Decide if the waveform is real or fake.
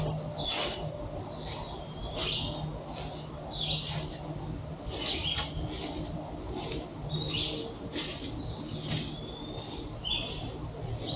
real